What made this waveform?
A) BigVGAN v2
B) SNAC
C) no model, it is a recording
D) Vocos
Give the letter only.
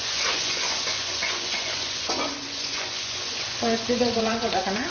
D